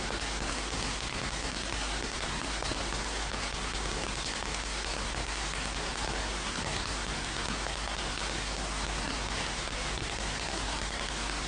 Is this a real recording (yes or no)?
no